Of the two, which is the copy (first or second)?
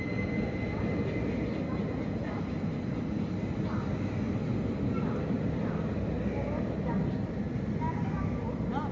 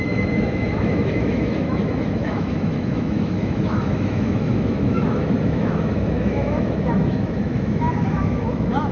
second